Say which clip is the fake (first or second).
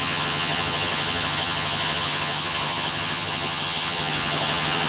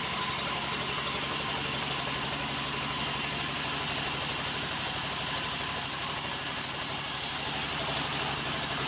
first